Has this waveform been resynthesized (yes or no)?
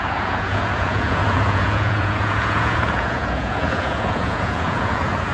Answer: yes